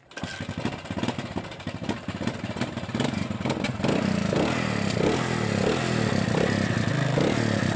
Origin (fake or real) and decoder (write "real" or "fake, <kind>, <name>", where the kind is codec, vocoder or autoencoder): real